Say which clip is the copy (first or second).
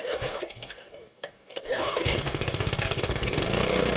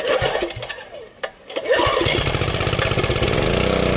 first